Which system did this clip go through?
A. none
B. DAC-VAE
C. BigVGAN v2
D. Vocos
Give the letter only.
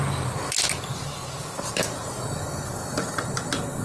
A